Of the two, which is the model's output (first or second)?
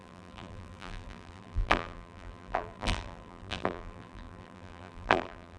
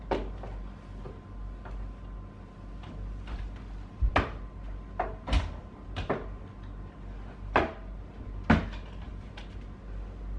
first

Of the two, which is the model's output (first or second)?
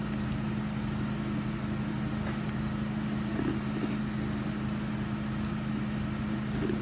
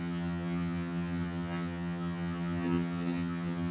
second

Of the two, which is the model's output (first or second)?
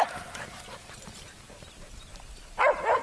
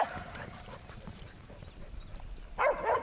second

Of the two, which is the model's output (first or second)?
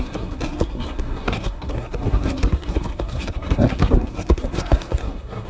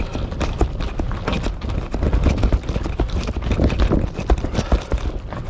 first